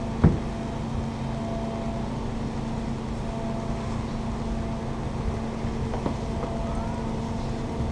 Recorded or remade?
recorded